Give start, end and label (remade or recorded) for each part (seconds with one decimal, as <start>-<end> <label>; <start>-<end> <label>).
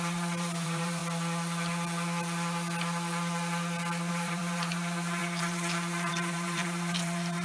0.0-1.0 remade; 1.0-4.1 recorded; 4.1-7.4 remade